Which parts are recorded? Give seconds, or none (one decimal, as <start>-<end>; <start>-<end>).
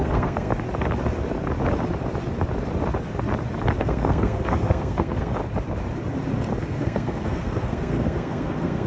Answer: 0.5-3.8; 5.3-6.6